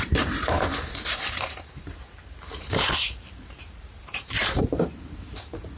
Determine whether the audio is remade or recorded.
remade